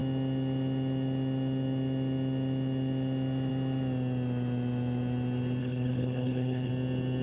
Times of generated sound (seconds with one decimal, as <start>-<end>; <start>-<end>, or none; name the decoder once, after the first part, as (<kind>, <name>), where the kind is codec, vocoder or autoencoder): 5.6-6.7 (codec, HILCodec)